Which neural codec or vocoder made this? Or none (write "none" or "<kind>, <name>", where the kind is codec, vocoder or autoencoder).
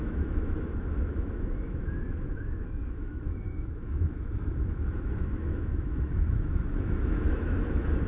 autoencoder, DAC-VAE